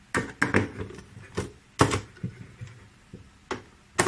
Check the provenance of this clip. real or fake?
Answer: real